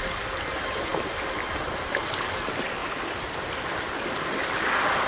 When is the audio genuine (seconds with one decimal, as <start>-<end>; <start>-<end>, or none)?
0.0-5.1